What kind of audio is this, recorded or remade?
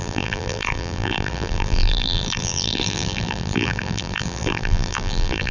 remade